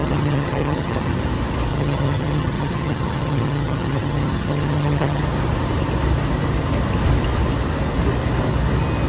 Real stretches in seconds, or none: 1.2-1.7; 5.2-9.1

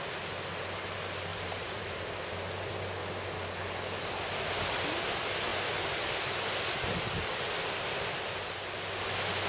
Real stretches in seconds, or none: 0.0-1.3; 2.1-9.5

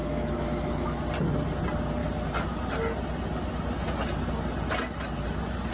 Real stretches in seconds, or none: 1.0-5.7

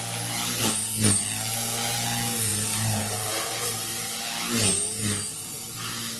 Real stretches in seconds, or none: 0.0-2.5; 4.2-6.2

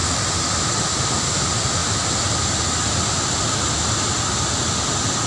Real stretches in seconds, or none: 0.0-5.3

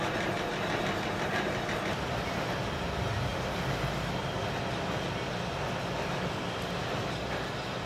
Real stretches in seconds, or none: 0.0-7.9

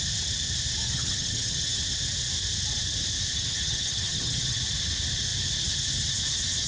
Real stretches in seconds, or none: 0.0-0.8; 1.8-3.3; 4.6-6.7

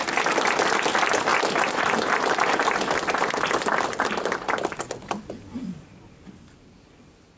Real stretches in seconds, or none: 0.0-7.4